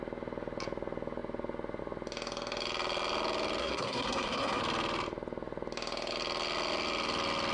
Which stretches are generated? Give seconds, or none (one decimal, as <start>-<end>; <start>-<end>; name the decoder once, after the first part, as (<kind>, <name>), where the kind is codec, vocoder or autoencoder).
3.6-4.6 (codec, SNAC)